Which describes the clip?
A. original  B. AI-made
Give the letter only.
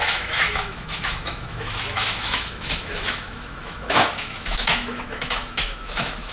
B